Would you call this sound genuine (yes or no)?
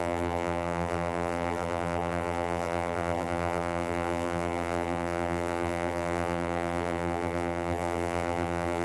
no